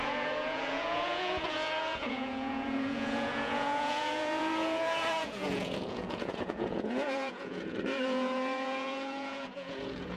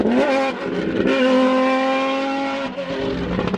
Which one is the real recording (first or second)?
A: second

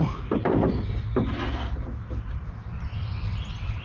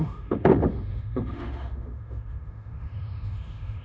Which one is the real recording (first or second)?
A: first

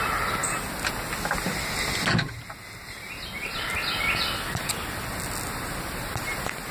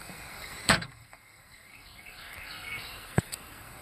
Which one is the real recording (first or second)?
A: first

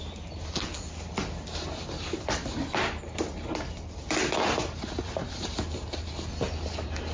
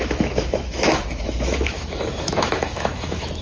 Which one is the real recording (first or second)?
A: first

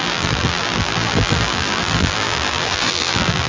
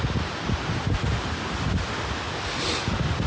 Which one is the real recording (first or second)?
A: second